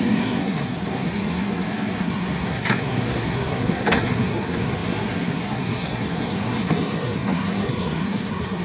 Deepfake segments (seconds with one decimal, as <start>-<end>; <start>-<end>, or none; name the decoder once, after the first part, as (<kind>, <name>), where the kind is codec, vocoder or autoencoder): 0.0-8.6 (codec, SNAC)